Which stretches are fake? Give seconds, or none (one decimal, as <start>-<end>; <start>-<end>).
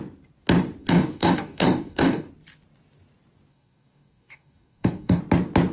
0.8-2.3; 3.5-5.2